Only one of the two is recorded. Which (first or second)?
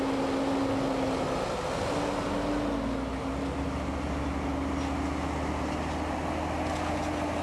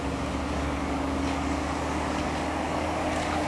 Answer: first